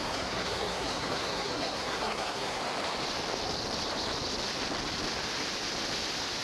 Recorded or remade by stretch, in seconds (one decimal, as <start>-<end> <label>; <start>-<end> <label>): 0.0-2.6 remade; 2.6-6.4 recorded